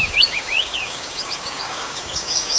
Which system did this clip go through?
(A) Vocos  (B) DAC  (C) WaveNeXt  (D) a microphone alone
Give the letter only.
B